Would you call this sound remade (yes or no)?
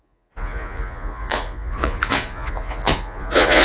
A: yes